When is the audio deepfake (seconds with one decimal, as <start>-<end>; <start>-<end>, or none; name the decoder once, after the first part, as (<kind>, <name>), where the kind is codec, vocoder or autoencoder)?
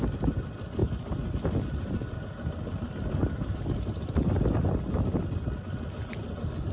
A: none